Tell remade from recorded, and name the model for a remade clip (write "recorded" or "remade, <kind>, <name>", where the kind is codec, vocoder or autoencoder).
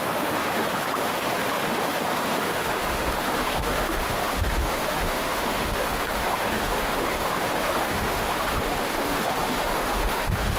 remade, autoencoder, DAC-VAE